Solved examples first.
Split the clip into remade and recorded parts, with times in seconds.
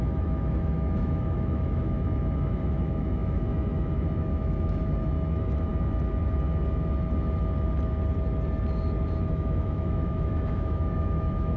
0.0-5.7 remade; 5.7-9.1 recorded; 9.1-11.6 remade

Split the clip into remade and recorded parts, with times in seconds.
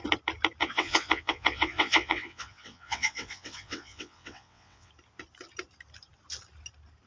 0.0-0.6 recorded; 0.6-4.9 remade; 4.9-7.1 recorded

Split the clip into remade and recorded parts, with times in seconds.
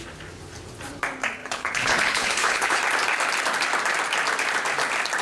0.0-1.4 recorded; 1.4-2.8 remade; 2.8-5.2 recorded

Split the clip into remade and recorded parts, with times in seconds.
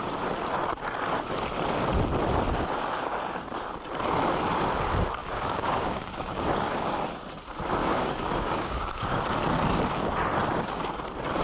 0.0-5.2 recorded; 5.2-6.9 remade; 6.9-7.8 recorded; 7.8-9.2 remade; 9.2-11.4 recorded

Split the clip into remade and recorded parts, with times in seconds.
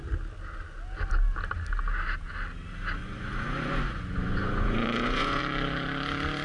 0.0-3.0 recorded; 3.0-5.4 remade; 5.4-6.4 recorded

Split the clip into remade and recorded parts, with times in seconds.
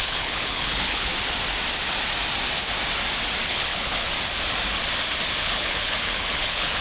0.0-1.1 remade; 1.1-3.5 recorded; 3.5-4.1 remade; 4.1-5.4 recorded; 5.4-6.8 remade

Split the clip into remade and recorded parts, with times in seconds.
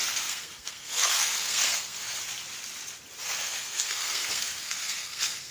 0.0-2.2 remade; 2.2-3.2 recorded; 3.2-5.5 remade